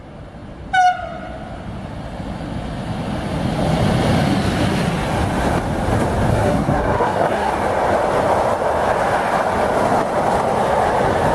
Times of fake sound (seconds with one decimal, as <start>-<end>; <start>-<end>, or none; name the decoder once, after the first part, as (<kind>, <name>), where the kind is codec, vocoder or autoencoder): 6.3-7.5 (codec, SNAC)